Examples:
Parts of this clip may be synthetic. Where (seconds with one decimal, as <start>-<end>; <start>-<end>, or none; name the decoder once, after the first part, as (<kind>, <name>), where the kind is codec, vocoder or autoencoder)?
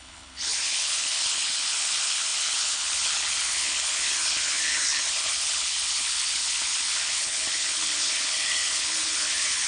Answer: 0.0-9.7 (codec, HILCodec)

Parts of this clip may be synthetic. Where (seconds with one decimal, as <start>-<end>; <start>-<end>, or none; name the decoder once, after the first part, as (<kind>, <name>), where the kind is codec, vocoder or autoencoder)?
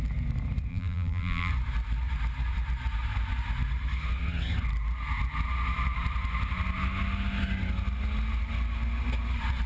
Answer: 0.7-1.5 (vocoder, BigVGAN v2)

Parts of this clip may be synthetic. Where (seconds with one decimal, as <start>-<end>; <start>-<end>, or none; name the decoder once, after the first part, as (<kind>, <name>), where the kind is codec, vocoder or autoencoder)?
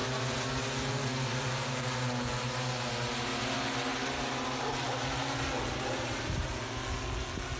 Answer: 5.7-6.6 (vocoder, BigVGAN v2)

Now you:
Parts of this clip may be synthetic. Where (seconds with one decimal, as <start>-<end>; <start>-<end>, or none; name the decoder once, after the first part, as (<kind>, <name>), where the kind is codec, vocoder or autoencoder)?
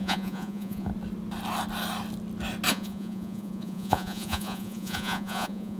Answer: 0.0-0.9 (vocoder, Vocos); 2.7-5.8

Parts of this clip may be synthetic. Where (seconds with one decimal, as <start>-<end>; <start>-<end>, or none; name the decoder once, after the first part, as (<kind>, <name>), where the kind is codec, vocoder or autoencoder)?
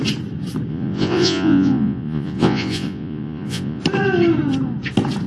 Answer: 0.7-3.8 (vocoder, Vocos)